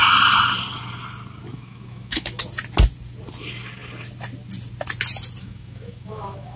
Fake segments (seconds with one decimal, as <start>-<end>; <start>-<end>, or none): 1.5-2.4; 5.4-6.6